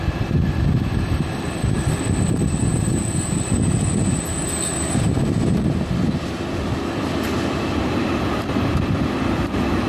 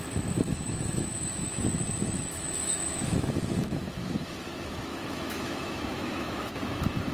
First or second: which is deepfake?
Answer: second